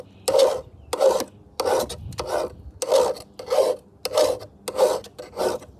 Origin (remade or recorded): recorded